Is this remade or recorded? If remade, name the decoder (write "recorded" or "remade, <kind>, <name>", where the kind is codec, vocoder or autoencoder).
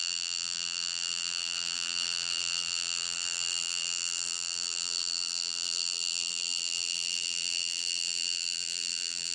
remade, vocoder, BigVGAN v2